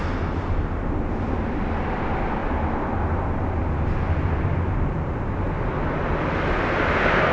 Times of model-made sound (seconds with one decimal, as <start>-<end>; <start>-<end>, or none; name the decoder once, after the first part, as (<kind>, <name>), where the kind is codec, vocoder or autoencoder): none

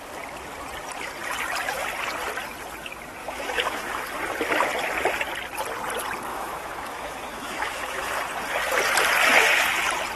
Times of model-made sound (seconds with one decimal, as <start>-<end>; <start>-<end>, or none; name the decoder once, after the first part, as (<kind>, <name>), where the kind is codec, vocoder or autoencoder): 3.2-4.0 (autoencoder, DAC-VAE); 6.3-8.1

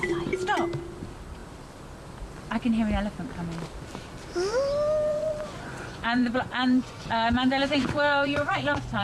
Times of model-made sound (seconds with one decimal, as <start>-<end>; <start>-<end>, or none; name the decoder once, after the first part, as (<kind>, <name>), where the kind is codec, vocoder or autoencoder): 5.1-9.0 (vocoder, Vocos)

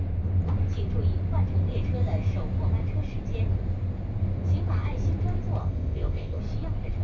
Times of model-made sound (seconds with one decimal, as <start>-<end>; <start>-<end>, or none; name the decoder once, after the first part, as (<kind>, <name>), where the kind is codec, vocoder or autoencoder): 5.6-6.4 (codec, ZipCodec)

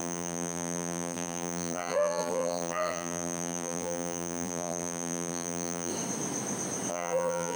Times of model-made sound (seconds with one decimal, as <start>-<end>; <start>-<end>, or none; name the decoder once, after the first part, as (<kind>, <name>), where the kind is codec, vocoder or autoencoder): 0.0-5.9 (vocoder, BigVGAN v2); 6.9-7.6

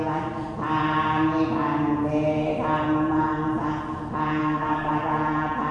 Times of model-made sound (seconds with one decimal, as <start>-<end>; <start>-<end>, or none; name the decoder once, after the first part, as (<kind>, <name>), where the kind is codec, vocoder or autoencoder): 4.4-4.9 (codec, SNAC)